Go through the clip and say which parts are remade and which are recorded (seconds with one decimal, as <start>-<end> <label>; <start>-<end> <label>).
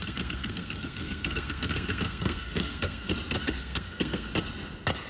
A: 0.0-3.1 remade; 3.1-3.6 recorded; 3.6-4.3 remade; 4.3-5.1 recorded